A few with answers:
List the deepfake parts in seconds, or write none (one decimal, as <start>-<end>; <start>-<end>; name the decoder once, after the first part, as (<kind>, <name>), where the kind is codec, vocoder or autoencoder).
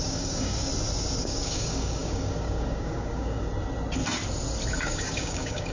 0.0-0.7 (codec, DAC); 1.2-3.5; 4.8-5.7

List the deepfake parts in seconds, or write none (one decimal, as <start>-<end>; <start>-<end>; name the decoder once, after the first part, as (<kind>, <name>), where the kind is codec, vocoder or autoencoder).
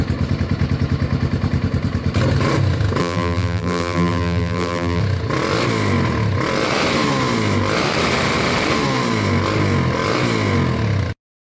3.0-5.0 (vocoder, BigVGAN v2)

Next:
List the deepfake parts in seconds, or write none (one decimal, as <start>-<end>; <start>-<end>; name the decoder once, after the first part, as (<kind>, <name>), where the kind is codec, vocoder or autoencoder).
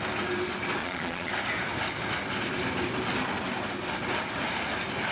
0.8-1.3 (vocoder, Vocos)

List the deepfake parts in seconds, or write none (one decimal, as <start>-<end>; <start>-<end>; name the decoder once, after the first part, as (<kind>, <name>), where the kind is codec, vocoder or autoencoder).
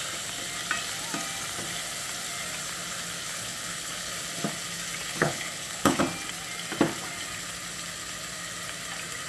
3.3-4.1 (codec, HILCodec); 5.1-6.0